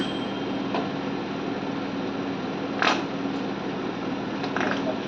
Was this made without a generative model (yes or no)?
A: yes